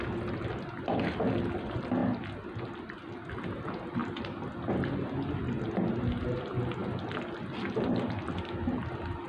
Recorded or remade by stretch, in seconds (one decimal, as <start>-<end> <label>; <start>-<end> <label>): 0.0-2.0 remade; 2.0-3.3 recorded; 3.3-6.8 remade; 6.8-8.1 recorded; 8.1-9.3 remade